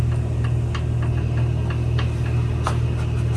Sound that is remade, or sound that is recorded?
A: recorded